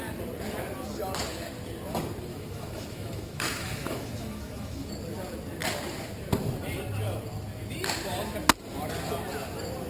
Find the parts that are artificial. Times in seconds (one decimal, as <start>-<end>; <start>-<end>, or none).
2.3-4.9